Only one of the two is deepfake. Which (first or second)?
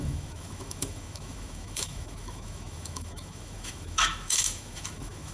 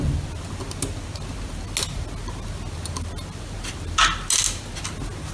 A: first